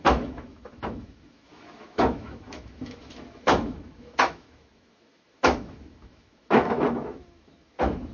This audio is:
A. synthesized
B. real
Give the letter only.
A